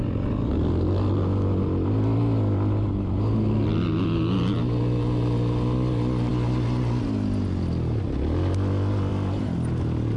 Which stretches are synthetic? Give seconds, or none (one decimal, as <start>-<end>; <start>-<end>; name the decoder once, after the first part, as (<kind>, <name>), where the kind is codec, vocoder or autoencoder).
none